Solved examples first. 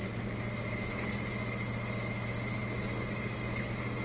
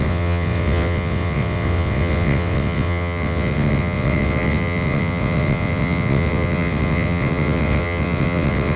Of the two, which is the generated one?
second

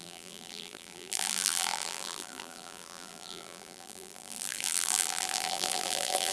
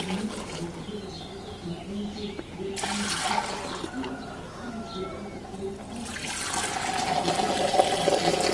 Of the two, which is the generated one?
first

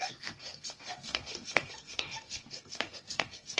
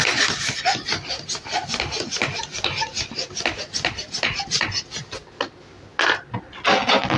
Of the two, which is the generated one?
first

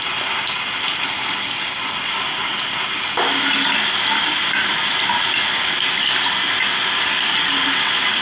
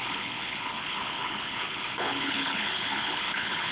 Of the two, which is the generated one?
second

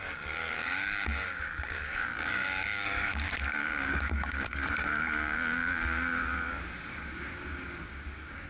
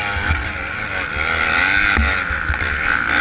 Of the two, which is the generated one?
first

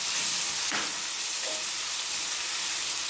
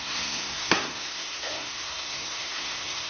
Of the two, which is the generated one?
second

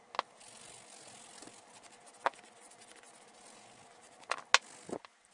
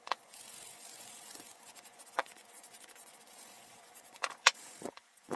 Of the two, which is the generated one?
second